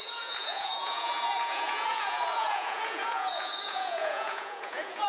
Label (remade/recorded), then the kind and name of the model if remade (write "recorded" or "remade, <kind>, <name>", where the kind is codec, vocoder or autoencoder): remade, vocoder, Vocos